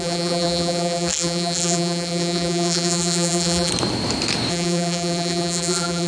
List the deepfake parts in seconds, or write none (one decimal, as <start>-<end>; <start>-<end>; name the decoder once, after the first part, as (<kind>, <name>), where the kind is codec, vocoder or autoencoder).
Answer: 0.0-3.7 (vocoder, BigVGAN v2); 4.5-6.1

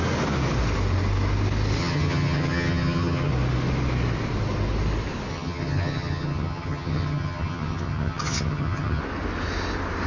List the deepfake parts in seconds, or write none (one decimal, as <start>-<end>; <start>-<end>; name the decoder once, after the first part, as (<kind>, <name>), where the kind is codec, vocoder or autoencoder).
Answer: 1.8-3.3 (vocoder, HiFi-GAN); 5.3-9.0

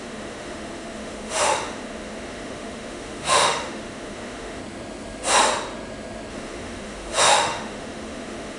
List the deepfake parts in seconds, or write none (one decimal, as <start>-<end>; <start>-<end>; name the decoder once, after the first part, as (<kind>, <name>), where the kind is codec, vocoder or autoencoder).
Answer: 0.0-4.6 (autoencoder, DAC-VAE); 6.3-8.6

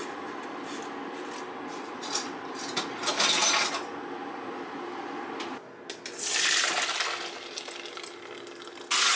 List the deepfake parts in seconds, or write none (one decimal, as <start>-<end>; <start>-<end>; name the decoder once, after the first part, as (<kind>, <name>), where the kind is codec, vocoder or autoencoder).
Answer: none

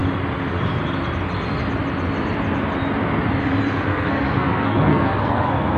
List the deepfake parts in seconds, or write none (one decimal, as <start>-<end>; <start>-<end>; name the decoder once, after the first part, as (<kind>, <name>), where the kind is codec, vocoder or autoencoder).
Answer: 3.9-5.8 (codec, SNAC)

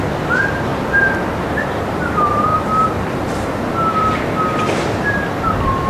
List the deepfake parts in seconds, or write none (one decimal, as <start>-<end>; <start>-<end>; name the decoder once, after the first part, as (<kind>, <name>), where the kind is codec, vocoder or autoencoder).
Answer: 0.7-2.1 (vocoder, BigVGAN v2); 2.5-4.1

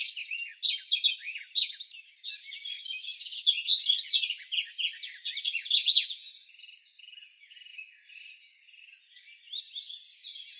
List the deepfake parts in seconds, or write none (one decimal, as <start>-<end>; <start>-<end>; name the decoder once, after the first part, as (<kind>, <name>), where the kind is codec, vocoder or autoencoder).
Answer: none

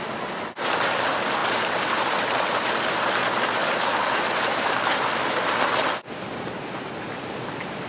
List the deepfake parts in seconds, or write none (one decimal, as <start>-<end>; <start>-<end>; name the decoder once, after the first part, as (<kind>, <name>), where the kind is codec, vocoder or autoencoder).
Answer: none